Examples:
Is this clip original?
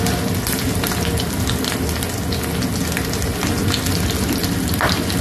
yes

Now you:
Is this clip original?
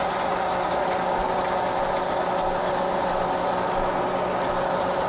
yes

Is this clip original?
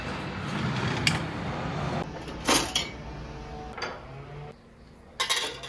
yes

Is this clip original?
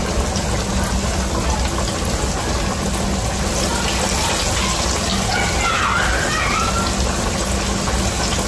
yes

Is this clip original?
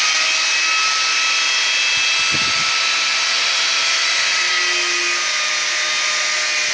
yes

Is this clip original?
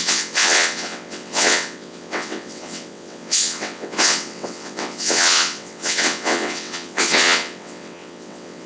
no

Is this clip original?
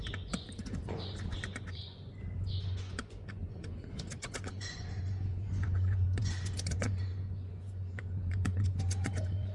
no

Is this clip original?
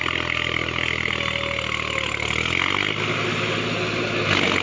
yes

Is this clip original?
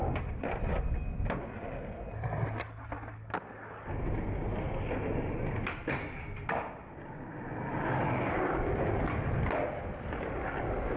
yes